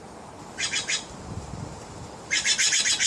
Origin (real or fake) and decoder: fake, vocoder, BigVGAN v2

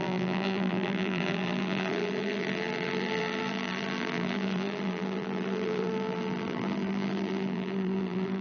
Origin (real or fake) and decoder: fake, vocoder, BigVGAN v2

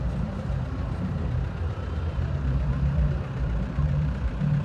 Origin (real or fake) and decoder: fake, vocoder, BigVGAN v2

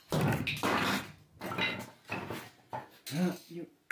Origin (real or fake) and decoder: real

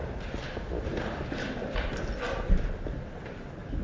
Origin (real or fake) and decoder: real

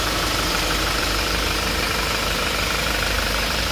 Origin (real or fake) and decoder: fake, vocoder, BigVGAN v2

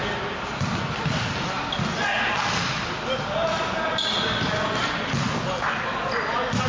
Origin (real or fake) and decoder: real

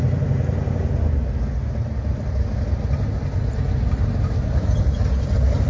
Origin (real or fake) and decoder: real